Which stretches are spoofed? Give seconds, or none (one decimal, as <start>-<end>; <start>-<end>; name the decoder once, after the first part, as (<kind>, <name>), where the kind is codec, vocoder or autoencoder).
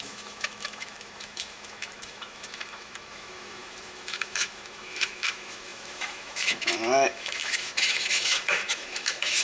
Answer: 0.0-9.4 (autoencoder, DAC-VAE)